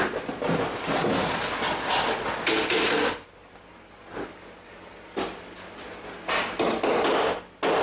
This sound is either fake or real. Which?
real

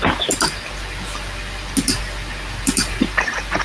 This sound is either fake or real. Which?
real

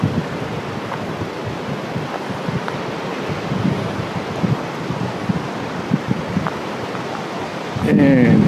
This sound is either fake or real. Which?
fake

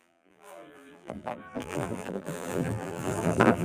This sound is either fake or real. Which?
fake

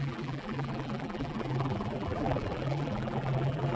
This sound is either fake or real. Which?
fake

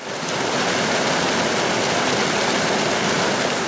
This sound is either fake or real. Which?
real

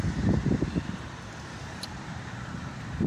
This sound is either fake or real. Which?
fake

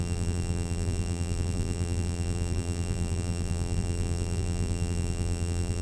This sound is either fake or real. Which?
fake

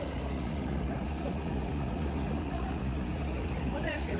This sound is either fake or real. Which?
fake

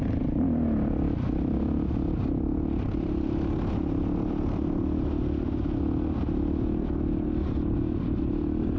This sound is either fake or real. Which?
real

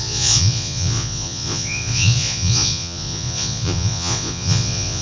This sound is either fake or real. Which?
fake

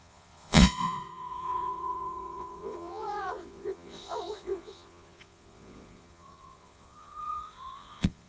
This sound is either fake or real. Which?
fake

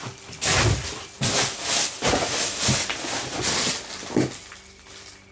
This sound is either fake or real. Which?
real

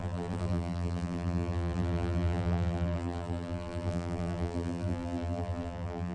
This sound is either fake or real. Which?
fake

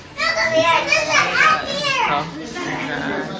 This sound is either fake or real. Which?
real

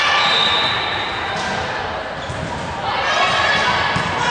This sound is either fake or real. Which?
real